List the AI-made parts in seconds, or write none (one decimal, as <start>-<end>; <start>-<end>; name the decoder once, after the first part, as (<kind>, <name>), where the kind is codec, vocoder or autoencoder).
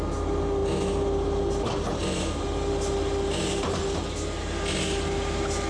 none